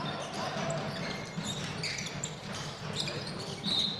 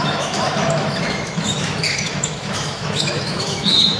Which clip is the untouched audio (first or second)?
first